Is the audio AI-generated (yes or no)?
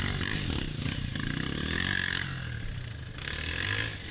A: no